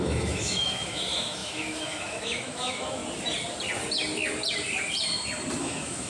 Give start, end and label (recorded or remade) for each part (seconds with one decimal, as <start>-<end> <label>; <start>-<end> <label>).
0.0-3.0 remade; 3.0-5.6 recorded; 5.6-6.1 remade